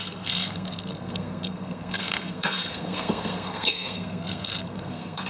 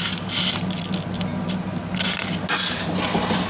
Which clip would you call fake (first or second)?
first